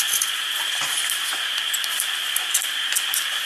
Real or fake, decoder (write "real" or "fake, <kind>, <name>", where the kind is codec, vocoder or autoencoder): real